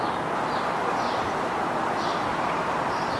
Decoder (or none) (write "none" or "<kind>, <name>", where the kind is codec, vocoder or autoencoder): none